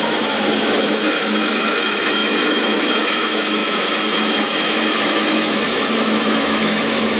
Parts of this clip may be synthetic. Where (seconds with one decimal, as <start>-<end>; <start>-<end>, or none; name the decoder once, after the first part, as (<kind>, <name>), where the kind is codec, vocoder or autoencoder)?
0.0-7.2 (autoencoder, DAC-VAE)